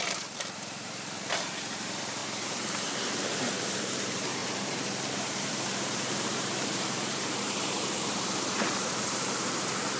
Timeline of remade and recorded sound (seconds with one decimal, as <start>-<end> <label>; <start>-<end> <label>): 0.0-2.2 remade; 2.2-3.8 recorded; 3.8-10.0 remade